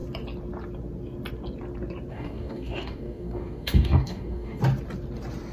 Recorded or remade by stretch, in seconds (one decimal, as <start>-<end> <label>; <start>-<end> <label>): 0.0-2.1 recorded; 2.1-4.6 remade; 4.6-5.5 recorded